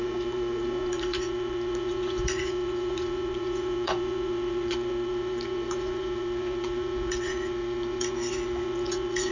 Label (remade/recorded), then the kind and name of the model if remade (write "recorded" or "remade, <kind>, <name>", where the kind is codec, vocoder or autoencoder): remade, vocoder, Vocos